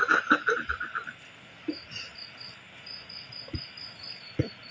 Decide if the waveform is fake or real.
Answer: real